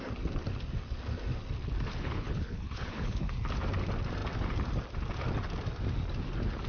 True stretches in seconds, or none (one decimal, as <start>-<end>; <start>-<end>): 0.0-1.9; 3.3-6.7